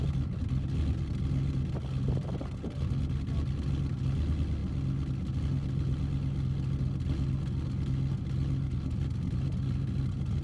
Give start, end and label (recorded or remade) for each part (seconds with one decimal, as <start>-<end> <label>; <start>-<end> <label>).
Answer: 0.0-10.4 recorded